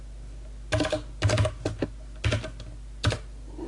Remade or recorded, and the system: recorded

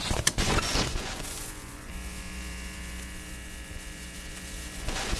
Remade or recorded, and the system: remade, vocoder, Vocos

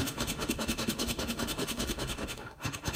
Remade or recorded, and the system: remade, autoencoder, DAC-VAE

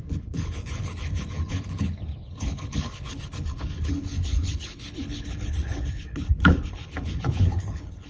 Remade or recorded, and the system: remade, codec, HILCodec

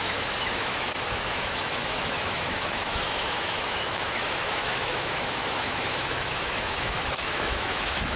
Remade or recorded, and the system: remade, autoencoder, DAC-VAE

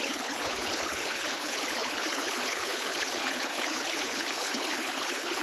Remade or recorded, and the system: remade, codec, HILCodec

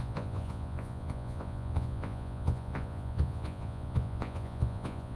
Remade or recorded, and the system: remade, vocoder, Vocos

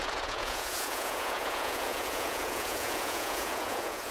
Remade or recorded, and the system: remade, vocoder, Vocos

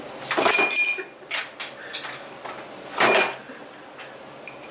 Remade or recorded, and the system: recorded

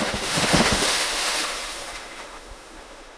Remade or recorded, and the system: remade, autoencoder, DAC-VAE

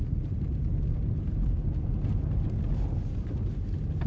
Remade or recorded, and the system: recorded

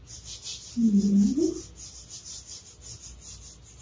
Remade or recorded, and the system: recorded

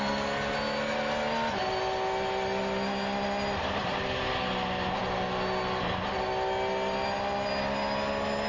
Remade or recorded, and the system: recorded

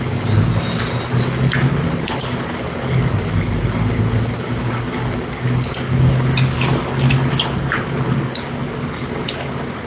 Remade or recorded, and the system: recorded